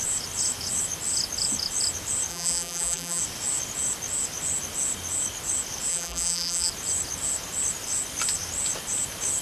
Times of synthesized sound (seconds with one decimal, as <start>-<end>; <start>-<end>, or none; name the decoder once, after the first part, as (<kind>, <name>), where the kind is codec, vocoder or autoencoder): 2.3-3.2 (vocoder, BigVGAN v2); 5.9-6.7